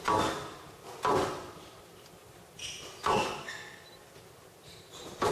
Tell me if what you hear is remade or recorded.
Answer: recorded